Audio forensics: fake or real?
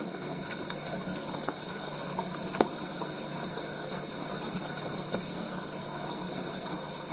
fake